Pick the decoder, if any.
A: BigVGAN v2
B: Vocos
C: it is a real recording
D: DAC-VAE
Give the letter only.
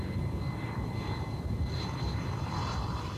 C